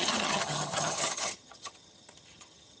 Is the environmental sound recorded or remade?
remade